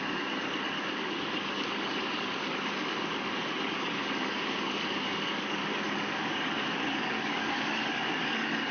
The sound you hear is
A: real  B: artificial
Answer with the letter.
B